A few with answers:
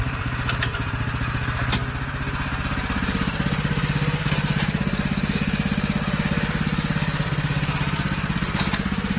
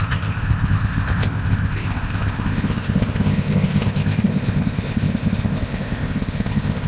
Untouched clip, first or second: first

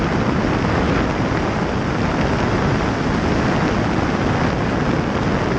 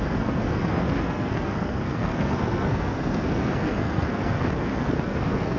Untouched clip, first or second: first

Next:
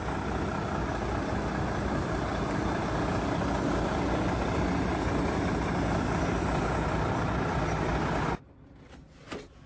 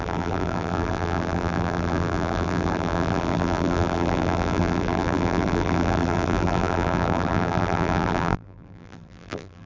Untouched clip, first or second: first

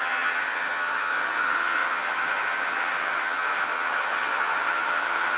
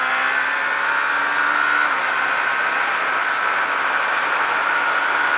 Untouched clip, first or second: second